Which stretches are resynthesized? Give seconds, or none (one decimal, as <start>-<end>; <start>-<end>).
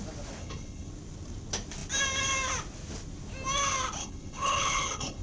0.4-0.9; 4.0-5.2